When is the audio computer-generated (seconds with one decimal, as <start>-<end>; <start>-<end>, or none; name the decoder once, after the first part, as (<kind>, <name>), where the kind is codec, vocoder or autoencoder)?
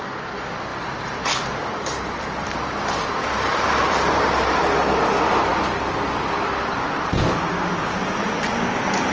0.7-4.6 (vocoder, BigVGAN v2)